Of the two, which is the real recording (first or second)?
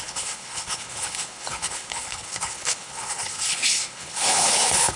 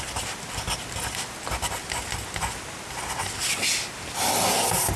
second